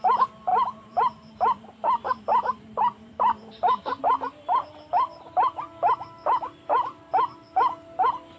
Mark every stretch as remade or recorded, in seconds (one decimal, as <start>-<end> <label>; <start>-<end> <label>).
0.0-0.5 recorded; 0.5-4.0 remade; 4.0-8.4 recorded